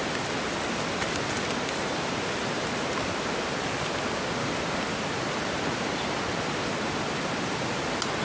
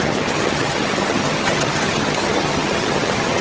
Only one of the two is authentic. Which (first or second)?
first